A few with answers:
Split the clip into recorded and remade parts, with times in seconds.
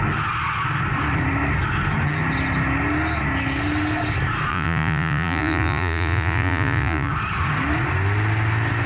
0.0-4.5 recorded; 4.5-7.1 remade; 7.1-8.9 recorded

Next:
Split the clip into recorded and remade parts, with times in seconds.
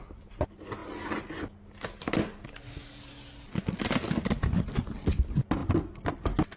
0.0-5.6 recorded; 5.6-6.1 remade; 6.1-6.6 recorded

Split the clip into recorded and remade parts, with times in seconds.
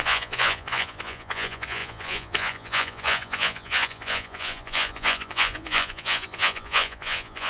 0.0-7.5 remade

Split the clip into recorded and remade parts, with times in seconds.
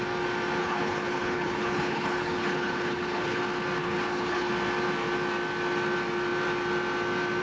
0.0-0.6 recorded; 0.6-3.4 remade; 3.4-3.8 recorded; 3.8-4.5 remade; 4.5-7.4 recorded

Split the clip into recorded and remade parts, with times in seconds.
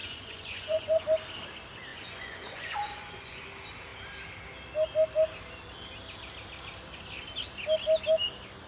0.0-1.0 remade; 1.0-1.9 recorded; 1.9-3.4 remade; 3.4-8.7 recorded